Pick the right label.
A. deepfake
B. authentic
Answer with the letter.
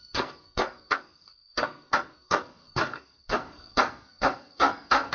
A